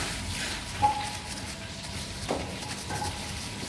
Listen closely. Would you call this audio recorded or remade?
recorded